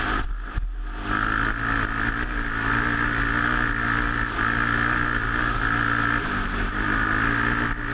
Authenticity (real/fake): real